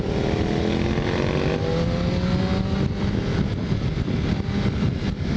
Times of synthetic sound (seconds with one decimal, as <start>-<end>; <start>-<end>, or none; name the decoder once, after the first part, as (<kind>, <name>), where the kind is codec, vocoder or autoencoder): none